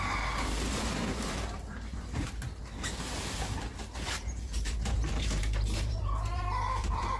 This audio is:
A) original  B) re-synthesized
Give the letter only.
B